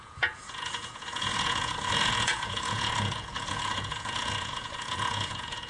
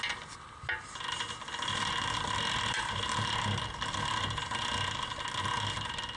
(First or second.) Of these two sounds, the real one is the second